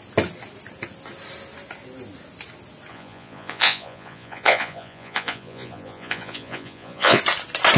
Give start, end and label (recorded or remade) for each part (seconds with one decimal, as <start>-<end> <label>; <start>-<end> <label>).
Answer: 0.0-2.9 recorded; 2.9-7.2 remade; 7.2-7.8 recorded